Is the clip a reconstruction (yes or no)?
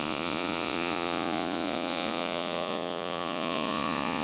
yes